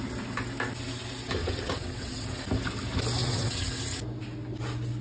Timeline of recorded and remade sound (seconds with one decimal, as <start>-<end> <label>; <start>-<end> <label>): 0.0-1.4 recorded; 1.4-2.4 remade; 2.4-3.2 recorded; 3.2-3.8 remade; 3.8-5.0 recorded